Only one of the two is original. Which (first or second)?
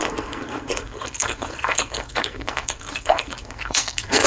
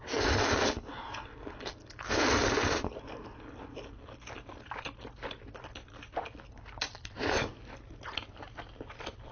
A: second